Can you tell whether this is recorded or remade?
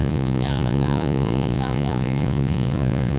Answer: remade